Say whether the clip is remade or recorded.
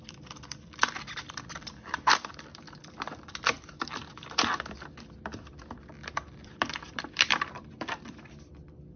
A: remade